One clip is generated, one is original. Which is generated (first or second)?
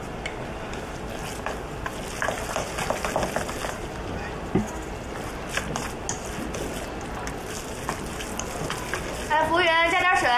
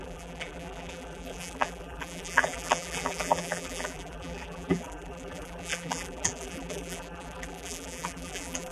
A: second